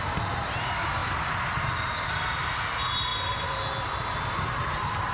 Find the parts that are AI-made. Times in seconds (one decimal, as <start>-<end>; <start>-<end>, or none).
none